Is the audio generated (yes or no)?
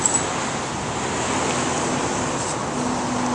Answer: no